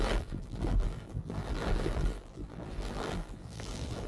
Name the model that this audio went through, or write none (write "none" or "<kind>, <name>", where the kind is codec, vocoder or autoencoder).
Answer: vocoder, BigVGAN v2